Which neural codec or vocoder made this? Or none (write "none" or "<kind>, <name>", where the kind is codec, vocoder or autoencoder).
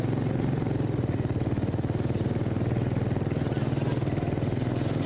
none